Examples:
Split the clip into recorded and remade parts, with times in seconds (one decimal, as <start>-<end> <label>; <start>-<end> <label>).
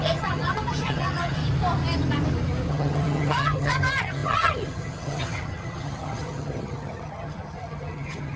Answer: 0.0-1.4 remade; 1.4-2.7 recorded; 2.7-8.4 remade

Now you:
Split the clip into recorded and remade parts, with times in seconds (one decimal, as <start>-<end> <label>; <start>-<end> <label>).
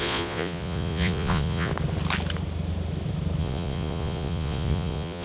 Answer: 0.0-1.7 remade; 1.7-3.4 recorded; 3.4-5.2 remade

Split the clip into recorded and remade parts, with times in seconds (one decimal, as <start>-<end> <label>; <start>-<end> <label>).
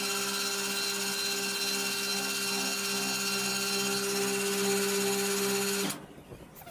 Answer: 0.0-6.7 recorded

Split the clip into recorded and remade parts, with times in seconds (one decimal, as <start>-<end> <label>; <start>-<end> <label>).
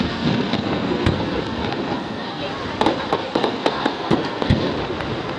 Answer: 0.0-2.4 remade; 2.4-3.1 recorded; 3.1-4.7 remade; 4.7-5.4 recorded